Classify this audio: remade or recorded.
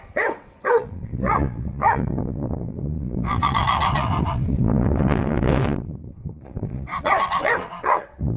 remade